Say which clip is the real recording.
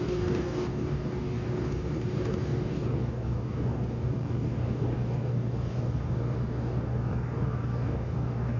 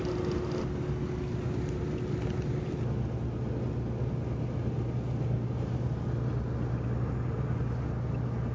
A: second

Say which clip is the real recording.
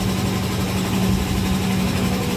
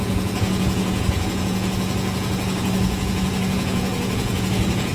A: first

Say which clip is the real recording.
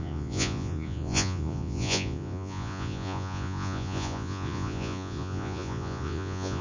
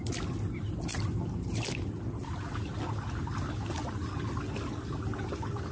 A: second